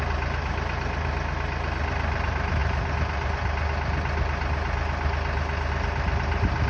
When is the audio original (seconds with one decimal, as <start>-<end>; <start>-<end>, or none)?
0.0-6.7